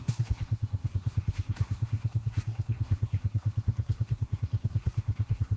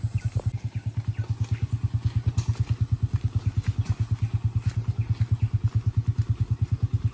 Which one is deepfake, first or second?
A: first